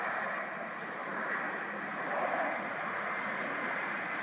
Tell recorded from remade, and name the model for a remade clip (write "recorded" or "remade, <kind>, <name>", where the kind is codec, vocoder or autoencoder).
recorded